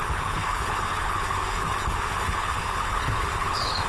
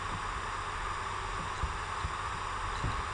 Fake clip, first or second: first